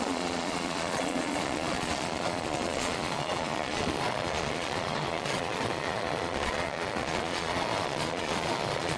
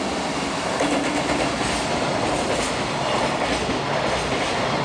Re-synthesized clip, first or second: first